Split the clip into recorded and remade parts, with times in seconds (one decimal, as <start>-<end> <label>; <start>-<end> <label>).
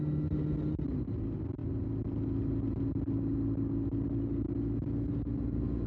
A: 0.0-5.9 recorded